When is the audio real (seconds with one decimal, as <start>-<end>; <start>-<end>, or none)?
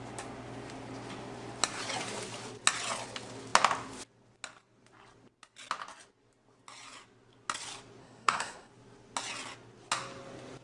0.0-8.0; 8.7-10.6